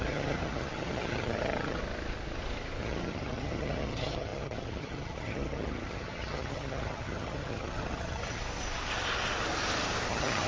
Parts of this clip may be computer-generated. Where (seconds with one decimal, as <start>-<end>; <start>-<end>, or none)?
0.0-1.8; 2.8-8.4; 10.1-10.5